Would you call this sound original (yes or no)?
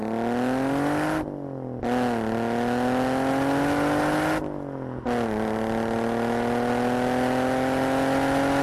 yes